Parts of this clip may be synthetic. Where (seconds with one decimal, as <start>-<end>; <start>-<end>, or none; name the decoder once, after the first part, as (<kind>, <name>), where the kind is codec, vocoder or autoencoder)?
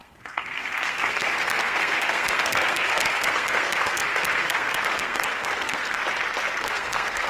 0.0-6.0 (codec, SNAC); 6.6-7.3